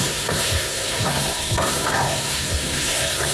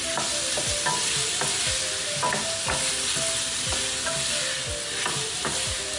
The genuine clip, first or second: second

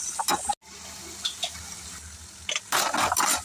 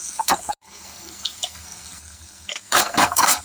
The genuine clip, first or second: first